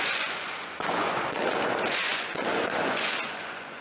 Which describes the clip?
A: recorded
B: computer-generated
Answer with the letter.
B